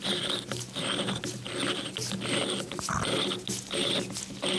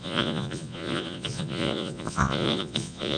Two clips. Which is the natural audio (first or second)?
first